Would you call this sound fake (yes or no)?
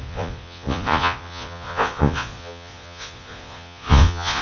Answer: yes